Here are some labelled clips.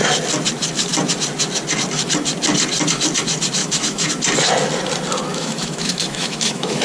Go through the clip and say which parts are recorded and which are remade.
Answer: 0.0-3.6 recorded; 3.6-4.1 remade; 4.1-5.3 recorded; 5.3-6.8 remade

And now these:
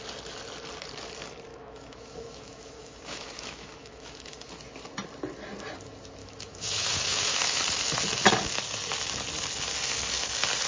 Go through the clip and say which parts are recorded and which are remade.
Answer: 0.0-1.5 recorded; 1.5-4.5 remade; 4.5-6.2 recorded; 6.2-7.6 remade; 7.6-10.7 recorded

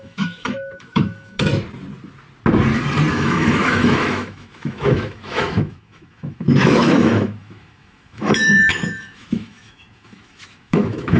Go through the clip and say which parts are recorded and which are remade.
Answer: 0.0-1.5 remade; 1.5-3.1 recorded; 3.1-11.2 remade

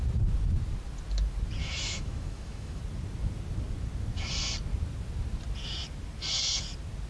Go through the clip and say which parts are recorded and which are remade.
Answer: 0.0-1.6 recorded; 1.6-2.8 remade; 2.8-7.1 recorded

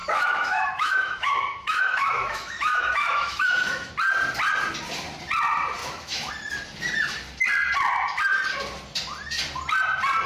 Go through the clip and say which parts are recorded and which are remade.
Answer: 0.0-3.9 remade; 3.9-5.8 recorded; 5.8-6.3 remade; 6.3-10.3 recorded

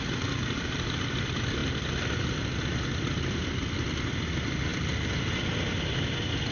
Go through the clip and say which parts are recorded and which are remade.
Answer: 0.0-6.5 recorded